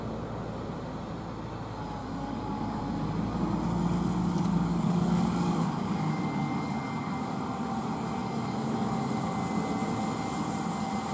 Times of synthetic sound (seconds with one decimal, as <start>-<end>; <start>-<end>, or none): 2.0-2.8; 4.2-7.4; 8.2-8.9